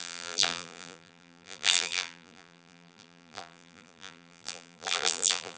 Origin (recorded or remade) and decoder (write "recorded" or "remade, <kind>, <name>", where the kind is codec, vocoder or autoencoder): remade, vocoder, BigVGAN v2